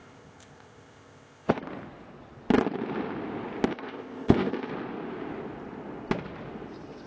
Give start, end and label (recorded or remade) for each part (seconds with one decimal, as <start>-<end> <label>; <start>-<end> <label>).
0.0-1.6 remade; 1.6-3.7 recorded; 3.7-4.7 remade; 4.7-7.1 recorded